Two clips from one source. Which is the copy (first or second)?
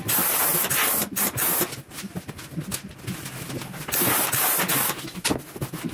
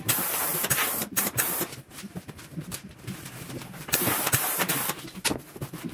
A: second